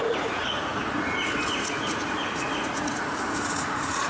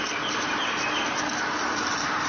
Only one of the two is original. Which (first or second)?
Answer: second